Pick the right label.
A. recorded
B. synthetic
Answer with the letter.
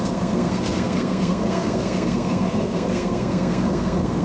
B